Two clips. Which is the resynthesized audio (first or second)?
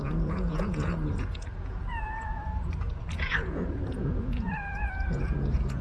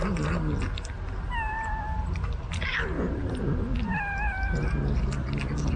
first